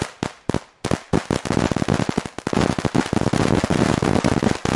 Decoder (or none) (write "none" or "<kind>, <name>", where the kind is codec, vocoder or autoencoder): none